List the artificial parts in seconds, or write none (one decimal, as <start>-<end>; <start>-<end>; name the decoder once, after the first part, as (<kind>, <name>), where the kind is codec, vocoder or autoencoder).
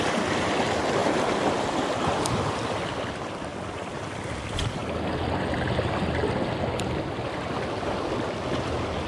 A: 1.0-2.6 (vocoder, BigVGAN v2)